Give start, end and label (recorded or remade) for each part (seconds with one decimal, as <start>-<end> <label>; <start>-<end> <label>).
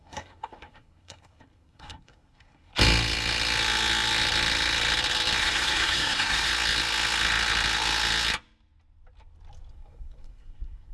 0.0-2.7 remade; 2.7-5.4 recorded; 5.4-6.5 remade; 6.5-9.7 recorded; 9.7-10.9 remade